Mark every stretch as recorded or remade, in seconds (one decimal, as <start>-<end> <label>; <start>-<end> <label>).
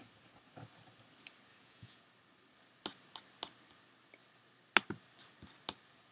0.0-1.5 recorded; 1.5-2.0 remade; 2.0-6.1 recorded